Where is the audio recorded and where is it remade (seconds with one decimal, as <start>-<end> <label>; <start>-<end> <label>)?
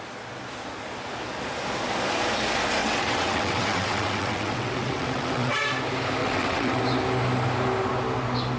0.0-2.8 recorded; 2.8-5.6 remade; 5.6-6.2 recorded; 6.2-6.8 remade; 6.8-8.6 recorded